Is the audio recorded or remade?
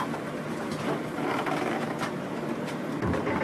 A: recorded